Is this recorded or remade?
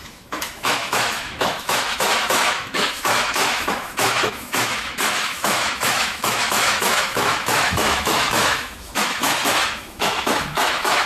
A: remade